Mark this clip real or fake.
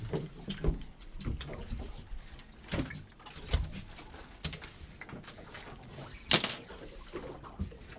real